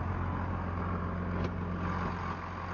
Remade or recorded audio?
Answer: recorded